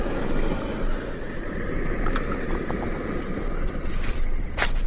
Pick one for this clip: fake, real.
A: real